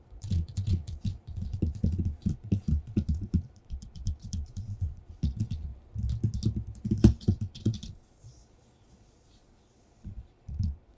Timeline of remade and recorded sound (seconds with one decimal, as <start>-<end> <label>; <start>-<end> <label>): 0.0-5.7 remade; 5.7-7.2 recorded; 7.2-11.0 remade